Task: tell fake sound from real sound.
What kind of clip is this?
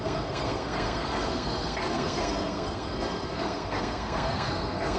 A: fake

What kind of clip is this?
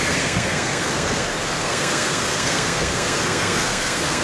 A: fake